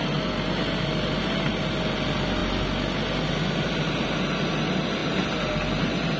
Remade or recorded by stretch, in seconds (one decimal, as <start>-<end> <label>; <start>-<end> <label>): 0.0-6.2 recorded